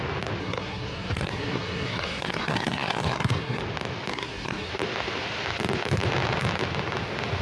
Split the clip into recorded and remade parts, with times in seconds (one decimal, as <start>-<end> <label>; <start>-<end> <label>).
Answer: 0.0-0.4 recorded; 0.4-3.6 remade; 3.6-4.1 recorded; 4.1-4.7 remade; 4.7-7.4 recorded